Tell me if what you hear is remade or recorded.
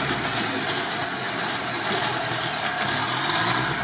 recorded